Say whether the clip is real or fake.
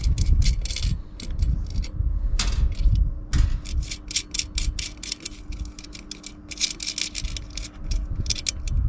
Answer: real